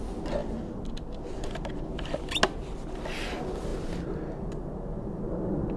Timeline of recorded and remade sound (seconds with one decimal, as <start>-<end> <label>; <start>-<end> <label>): 0.0-5.8 recorded